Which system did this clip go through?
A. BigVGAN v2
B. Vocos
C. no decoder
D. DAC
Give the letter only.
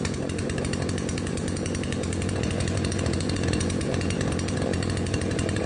B